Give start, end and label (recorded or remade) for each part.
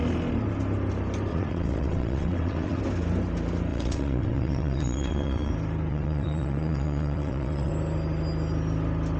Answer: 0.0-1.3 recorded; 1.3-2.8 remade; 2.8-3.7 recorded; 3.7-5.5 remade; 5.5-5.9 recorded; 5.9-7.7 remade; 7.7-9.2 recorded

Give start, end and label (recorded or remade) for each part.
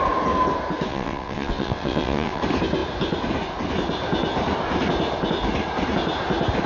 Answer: 0.0-0.9 recorded; 0.9-2.4 remade; 2.4-6.7 recorded